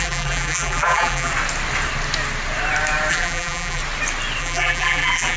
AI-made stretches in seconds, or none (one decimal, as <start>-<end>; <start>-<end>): 0.0-1.3; 3.1-3.8; 4.4-5.4

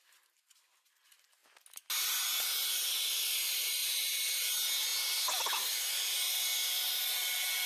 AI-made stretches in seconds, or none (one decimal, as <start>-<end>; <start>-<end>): 3.8-4.5

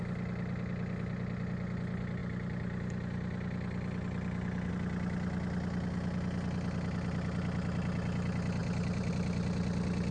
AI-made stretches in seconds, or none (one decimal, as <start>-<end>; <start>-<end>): 8.6-9.1

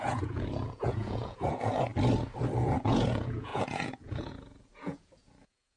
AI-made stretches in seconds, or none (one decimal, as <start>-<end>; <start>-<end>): 0.0-1.9; 2.6-5.8